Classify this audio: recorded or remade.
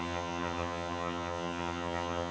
remade